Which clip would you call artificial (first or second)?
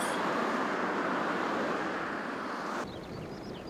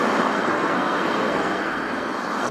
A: second